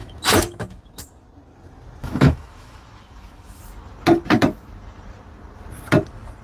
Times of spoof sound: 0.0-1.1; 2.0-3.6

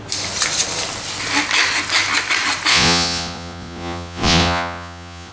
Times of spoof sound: 2.7-5.3

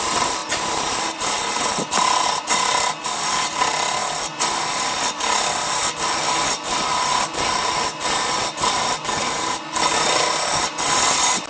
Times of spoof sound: none

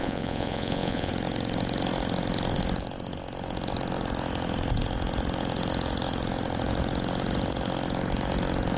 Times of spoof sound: 0.0-1.1

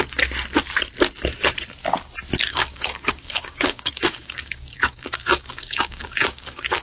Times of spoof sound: 2.5-6.8

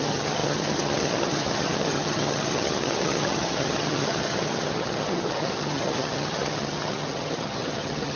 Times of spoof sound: 0.0-8.2

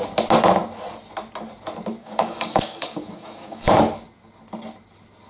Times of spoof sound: 2.0-3.7